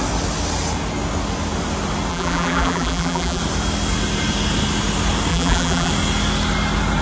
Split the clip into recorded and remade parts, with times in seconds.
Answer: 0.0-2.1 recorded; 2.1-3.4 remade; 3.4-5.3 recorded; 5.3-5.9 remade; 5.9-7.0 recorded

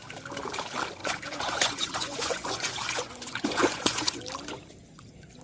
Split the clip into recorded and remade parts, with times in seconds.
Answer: 0.0-1.0 recorded; 1.0-4.2 remade; 4.2-5.4 recorded

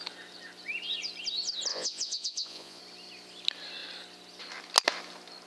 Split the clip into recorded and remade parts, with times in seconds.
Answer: 0.0-1.7 recorded; 1.7-2.8 remade; 2.8-5.5 recorded

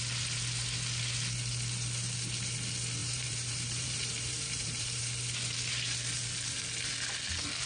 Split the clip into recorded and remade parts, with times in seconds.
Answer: 0.0-3.0 recorded; 3.0-5.0 remade; 5.0-7.7 recorded

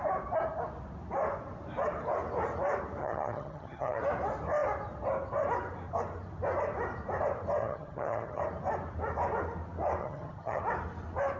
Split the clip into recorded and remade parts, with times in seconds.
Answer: 0.0-3.0 recorded; 3.0-4.0 remade; 4.0-7.6 recorded; 7.6-8.4 remade; 8.4-10.0 recorded; 10.0-10.6 remade; 10.6-11.4 recorded